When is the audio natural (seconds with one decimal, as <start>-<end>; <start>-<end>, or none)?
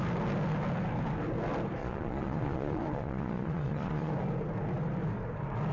0.0-1.8; 4.1-5.7